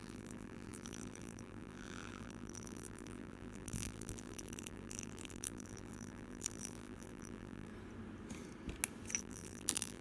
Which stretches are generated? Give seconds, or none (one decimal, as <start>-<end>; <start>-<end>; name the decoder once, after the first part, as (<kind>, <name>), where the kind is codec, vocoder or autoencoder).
0.0-7.7 (vocoder, BigVGAN v2); 9.2-10.0